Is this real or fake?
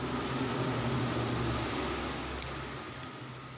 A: real